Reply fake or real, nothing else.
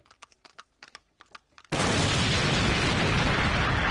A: real